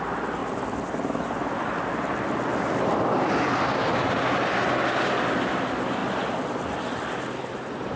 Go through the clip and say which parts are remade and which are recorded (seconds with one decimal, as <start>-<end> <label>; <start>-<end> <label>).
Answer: 0.0-8.0 recorded